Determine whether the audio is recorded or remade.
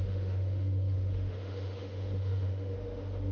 remade